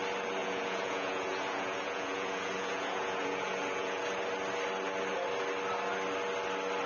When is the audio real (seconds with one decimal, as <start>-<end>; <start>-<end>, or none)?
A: 0.0-0.4; 4.0-6.9